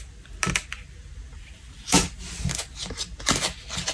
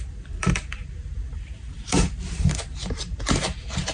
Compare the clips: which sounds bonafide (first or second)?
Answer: first